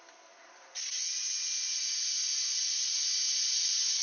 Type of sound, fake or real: real